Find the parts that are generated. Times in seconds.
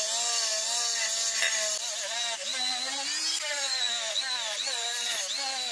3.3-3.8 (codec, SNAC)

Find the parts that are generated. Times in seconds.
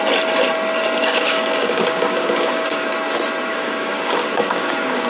1.1-2.9 (codec, DAC); 3.5-5.1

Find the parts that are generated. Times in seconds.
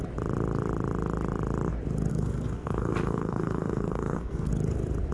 2.1-4.5 (codec, SNAC)